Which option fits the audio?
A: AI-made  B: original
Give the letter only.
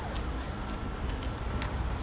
B